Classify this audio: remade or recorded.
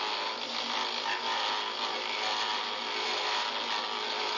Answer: recorded